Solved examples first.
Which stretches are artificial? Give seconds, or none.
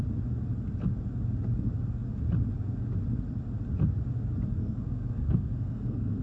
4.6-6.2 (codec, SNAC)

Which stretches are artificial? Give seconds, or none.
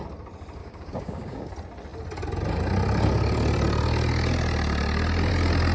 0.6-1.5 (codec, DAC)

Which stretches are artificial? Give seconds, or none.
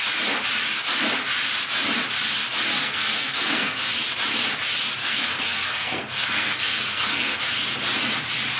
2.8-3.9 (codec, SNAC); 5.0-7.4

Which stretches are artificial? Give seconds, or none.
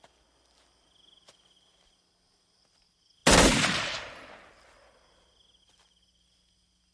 none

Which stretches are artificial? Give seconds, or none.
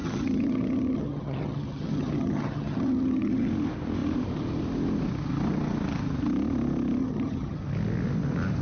0.0-3.5 (vocoder, HiFi-GAN); 7.0-7.6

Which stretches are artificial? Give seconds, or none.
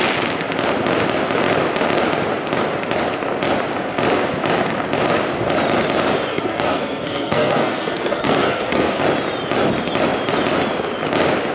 6.3-9.0 (codec, SNAC)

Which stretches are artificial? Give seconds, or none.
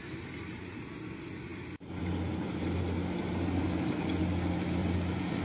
1.5-2.0 (vocoder, BigVGAN v2); 3.6-4.1; 4.8-5.4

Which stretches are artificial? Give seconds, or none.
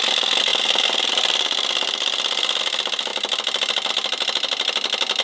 0.0-5.2 (vocoder, BigVGAN v2)